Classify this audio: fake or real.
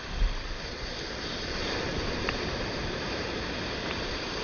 fake